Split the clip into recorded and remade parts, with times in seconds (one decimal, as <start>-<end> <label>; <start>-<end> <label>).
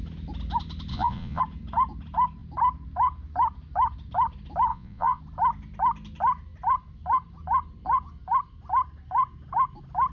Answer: 0.0-0.9 recorded; 0.9-1.4 remade; 1.4-4.7 recorded; 4.7-5.2 remade; 5.2-10.1 recorded